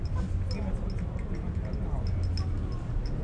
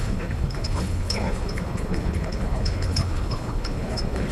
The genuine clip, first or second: first